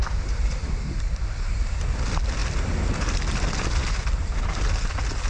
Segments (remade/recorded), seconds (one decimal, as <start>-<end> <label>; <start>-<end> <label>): 0.0-0.7 remade; 0.7-5.3 recorded